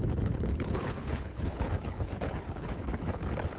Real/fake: fake